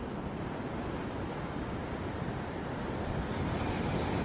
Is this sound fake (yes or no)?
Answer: no